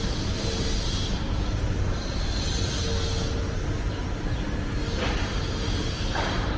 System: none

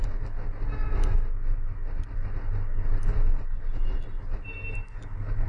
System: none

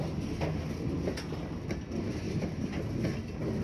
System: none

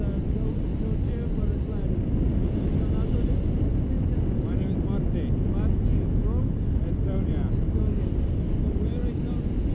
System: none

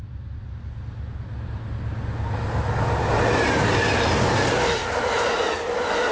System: none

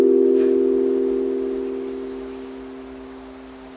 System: none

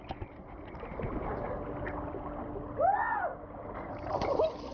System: none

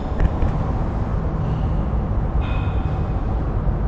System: none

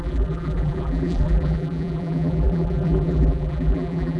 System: vocoder, BigVGAN v2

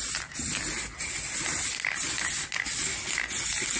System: none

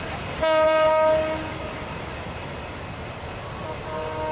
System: none